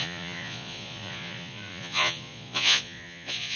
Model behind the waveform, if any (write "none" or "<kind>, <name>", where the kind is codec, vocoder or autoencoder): vocoder, Vocos